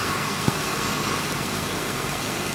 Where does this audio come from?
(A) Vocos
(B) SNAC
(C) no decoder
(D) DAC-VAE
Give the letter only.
B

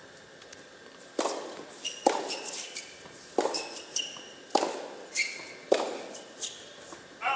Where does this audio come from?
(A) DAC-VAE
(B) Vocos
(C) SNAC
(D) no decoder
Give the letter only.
D